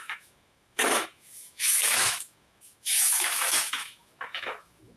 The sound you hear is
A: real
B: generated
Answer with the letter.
B